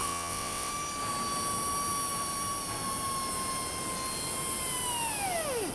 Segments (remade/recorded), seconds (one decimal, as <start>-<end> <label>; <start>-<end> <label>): 0.0-0.7 remade; 0.7-5.7 recorded